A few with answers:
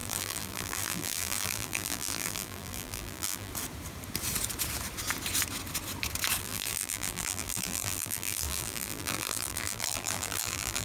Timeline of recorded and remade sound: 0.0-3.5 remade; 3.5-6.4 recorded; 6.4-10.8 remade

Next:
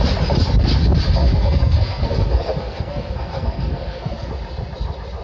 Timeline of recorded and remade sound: 0.0-1.2 recorded; 1.2-4.3 remade; 4.3-5.2 recorded